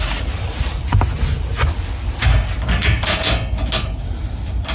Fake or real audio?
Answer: real